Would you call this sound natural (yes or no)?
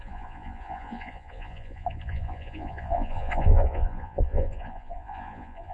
no